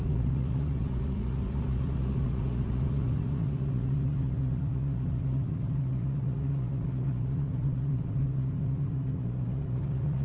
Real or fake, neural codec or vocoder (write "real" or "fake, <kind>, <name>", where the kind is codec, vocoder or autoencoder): fake, vocoder, Vocos